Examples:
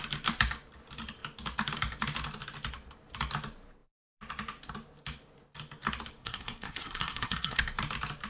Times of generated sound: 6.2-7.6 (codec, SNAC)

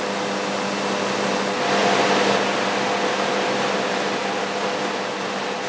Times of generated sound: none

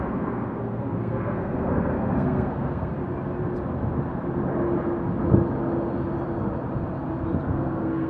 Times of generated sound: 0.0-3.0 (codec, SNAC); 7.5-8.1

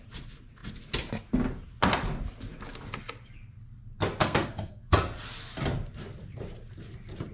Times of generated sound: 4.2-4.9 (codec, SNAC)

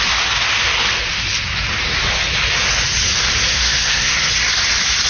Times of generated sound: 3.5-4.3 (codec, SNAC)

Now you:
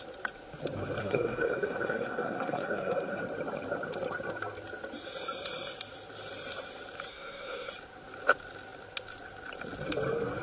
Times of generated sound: 1.0-3.2 (codec, SNAC); 7.1-7.7

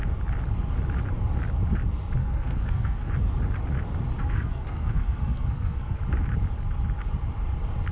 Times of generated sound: 2.2-3.1 (codec, SNAC); 4.2-6.0

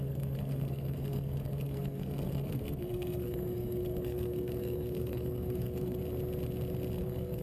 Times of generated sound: 0.0-6.0 (codec, SNAC); 7.0-7.4